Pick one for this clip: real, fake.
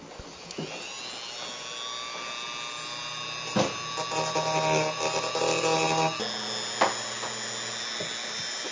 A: real